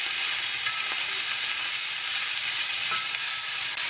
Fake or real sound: real